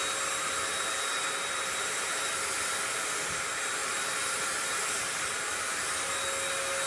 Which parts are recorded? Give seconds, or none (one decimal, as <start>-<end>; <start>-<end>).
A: 0.0-0.7; 2.3-3.8; 5.3-6.9